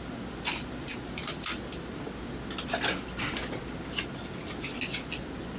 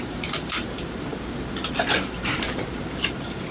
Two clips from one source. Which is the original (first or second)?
first